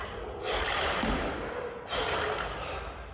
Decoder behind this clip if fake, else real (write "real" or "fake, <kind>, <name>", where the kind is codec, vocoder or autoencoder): real